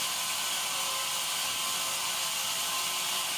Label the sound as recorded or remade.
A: recorded